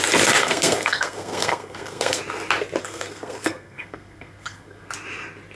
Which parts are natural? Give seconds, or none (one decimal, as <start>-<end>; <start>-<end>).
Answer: 0.0-0.4; 2.2-2.8; 4.9-5.6